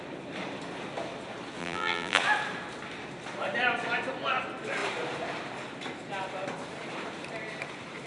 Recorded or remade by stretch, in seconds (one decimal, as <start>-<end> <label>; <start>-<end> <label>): 0.0-1.6 recorded; 1.6-2.2 remade; 2.2-8.1 recorded